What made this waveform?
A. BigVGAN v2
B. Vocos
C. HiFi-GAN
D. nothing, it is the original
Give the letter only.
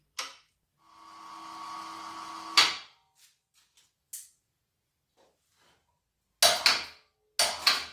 D